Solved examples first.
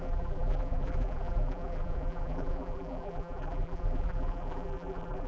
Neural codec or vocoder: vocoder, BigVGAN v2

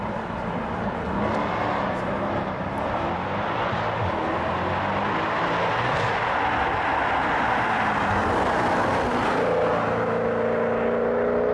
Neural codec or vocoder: none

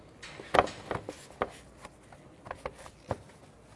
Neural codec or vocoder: none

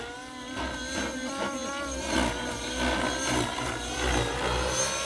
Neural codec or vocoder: none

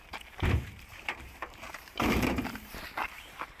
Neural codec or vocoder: vocoder, BigVGAN v2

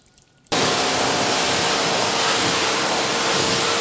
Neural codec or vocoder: vocoder, BigVGAN v2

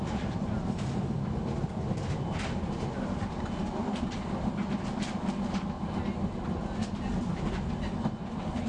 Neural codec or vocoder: none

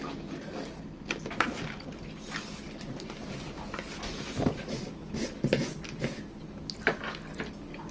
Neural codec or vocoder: none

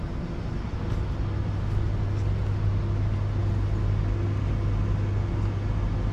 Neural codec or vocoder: none